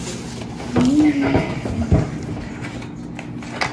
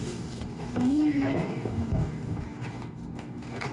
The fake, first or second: second